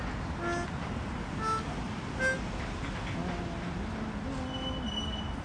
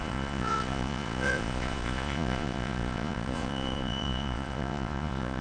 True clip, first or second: first